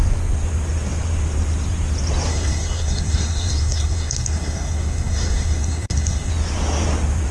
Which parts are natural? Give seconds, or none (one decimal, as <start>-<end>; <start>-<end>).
0.0-2.3; 6.3-7.3